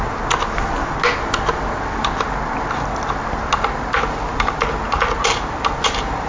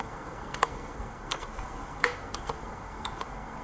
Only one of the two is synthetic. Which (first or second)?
second